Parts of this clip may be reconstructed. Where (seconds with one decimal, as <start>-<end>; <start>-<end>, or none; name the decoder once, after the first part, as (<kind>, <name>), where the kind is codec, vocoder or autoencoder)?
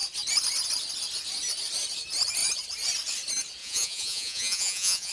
3.6-5.1 (vocoder, Vocos)